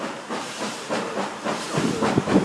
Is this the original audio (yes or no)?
no